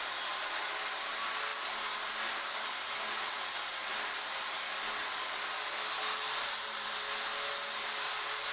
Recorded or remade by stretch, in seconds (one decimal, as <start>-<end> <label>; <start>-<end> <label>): 0.0-8.5 recorded

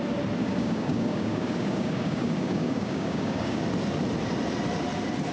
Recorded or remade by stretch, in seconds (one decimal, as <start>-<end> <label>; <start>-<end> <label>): 0.0-0.4 recorded; 0.4-3.6 remade; 3.6-5.3 recorded

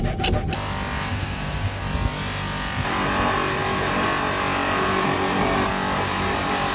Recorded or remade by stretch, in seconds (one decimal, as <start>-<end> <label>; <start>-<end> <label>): 0.0-1.1 recorded; 1.1-1.8 remade; 1.8-6.7 recorded

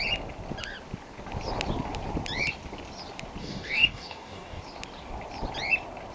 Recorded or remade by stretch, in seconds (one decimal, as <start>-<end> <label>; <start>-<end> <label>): 0.0-3.4 recorded; 3.4-4.6 remade; 4.6-6.1 recorded

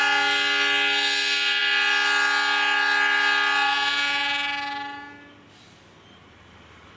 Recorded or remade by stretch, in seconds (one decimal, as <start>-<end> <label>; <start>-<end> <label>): 0.0-7.0 recorded

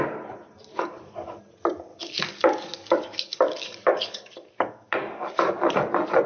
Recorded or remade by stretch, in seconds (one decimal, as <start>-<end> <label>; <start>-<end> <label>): 0.0-0.7 recorded; 0.7-1.4 remade; 1.4-1.9 recorded; 1.9-5.7 remade; 5.7-6.3 recorded

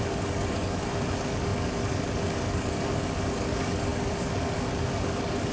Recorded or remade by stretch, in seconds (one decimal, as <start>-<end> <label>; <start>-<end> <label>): 0.0-5.5 remade